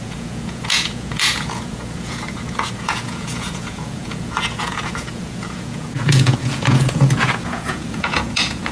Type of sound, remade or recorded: remade